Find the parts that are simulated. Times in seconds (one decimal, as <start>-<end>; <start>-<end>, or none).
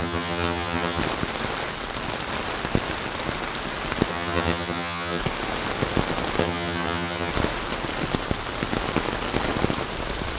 0.0-1.0; 4.1-5.2; 6.4-7.3